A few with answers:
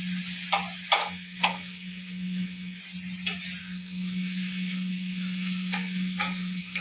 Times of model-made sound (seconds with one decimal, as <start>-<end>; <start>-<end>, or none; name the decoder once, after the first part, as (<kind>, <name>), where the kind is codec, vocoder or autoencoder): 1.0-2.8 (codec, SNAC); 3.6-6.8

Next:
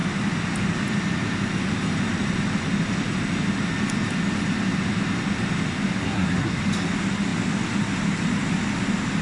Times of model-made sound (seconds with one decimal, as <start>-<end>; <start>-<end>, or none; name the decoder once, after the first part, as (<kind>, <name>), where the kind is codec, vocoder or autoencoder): 6.0-6.6 (codec, SNAC)

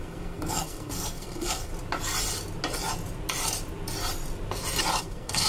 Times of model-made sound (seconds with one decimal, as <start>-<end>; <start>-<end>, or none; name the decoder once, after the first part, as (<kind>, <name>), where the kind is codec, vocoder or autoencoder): 0.0-1.7 (codec, SNAC); 5.0-5.5

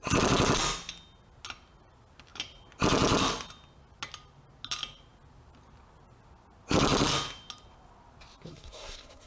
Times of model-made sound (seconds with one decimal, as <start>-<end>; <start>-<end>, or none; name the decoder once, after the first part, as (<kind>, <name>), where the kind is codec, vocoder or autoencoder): 8.5-9.3 (codec, SNAC)

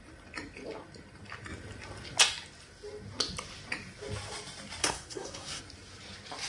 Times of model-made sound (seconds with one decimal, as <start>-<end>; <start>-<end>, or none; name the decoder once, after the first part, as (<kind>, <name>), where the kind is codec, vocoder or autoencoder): 4.8-5.6 (codec, SNAC)